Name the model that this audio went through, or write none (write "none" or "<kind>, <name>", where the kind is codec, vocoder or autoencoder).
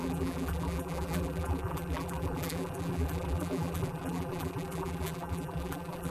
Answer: vocoder, BigVGAN v2